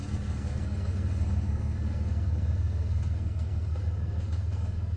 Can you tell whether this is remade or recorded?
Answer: remade